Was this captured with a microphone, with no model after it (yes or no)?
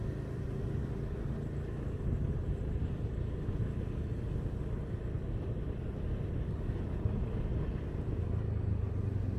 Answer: yes